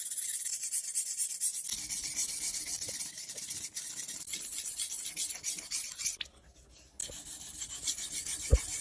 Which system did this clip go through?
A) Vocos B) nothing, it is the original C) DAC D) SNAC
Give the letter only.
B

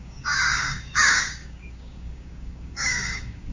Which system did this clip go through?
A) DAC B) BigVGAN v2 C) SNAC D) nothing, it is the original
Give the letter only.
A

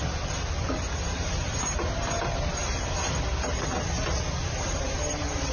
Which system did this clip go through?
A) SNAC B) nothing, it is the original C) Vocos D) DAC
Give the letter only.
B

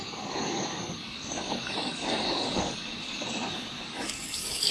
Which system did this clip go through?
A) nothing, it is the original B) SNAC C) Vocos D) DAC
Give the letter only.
D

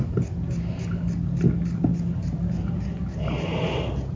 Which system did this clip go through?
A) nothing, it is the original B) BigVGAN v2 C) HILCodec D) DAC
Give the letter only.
A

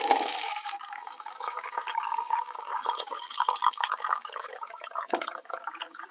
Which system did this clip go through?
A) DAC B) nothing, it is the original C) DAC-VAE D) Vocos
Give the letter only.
A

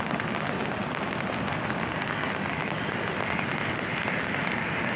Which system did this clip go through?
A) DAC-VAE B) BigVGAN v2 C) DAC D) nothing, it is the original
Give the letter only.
D